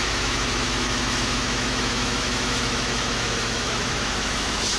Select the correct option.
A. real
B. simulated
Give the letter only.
B